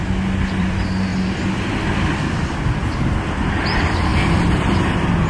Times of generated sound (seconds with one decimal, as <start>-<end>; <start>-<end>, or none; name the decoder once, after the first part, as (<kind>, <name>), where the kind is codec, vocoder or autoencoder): 0.6-1.1 (vocoder, BigVGAN v2); 3.3-5.3